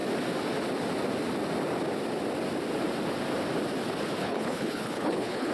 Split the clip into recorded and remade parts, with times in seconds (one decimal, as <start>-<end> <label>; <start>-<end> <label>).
0.0-4.2 recorded; 4.2-5.5 remade